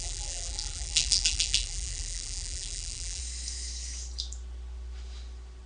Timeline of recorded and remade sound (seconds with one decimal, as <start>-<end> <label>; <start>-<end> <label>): 0.0-3.2 remade; 3.2-5.7 recorded